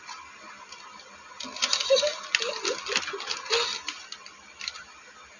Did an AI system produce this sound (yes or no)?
no